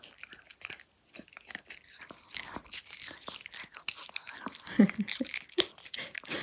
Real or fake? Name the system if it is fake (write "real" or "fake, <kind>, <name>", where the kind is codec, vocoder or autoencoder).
real